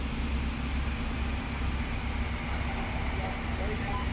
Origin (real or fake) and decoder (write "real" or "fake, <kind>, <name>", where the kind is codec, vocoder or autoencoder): real